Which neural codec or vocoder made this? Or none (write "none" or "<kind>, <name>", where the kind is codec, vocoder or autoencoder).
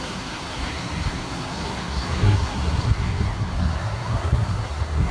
codec, SNAC